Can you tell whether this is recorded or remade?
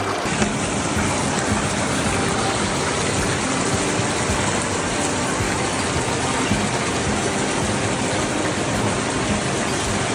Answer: recorded